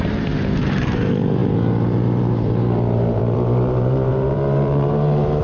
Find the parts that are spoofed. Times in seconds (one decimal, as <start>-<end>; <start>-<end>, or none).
0.0-5.4